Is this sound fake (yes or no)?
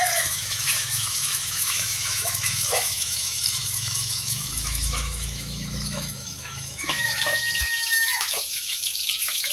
yes